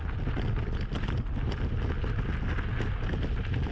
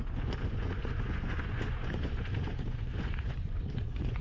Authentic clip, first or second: first